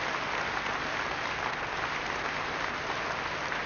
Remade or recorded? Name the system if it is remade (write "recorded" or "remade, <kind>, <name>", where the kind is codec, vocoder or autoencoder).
recorded